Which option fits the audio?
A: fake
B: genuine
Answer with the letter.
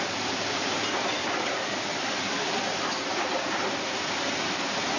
A